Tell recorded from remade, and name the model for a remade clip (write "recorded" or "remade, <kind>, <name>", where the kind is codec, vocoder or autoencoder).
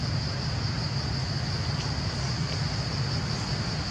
recorded